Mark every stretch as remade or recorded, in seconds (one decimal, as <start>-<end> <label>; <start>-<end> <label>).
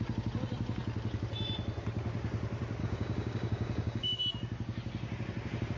0.0-2.8 recorded; 2.8-4.2 remade; 4.2-5.8 recorded